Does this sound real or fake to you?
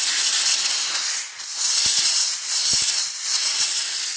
real